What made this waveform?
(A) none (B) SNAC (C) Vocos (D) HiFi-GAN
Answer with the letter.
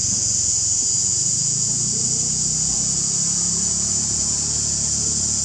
C